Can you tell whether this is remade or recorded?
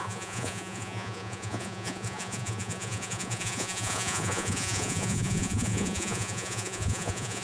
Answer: remade